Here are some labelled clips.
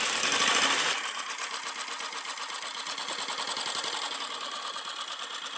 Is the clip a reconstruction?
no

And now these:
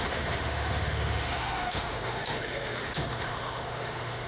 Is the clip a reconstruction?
yes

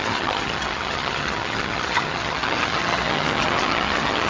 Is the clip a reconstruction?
yes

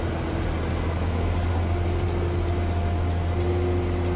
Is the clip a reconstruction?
no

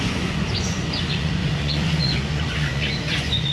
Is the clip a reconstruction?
yes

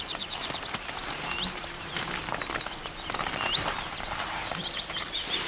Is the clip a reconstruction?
yes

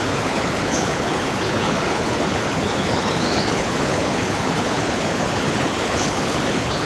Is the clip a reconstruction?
yes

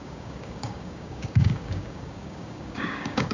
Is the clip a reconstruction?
yes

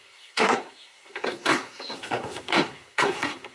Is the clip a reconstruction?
yes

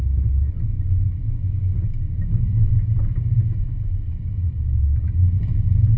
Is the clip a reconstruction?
no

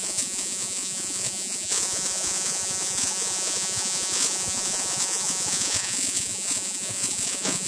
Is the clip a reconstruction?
yes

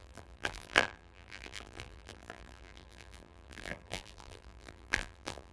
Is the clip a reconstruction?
yes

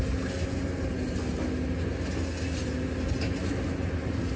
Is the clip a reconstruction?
no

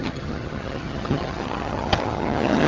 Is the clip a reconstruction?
yes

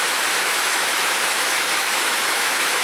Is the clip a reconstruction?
yes